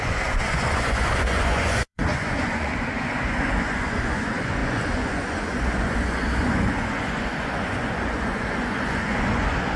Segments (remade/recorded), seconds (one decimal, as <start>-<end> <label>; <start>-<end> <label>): 0.0-9.8 remade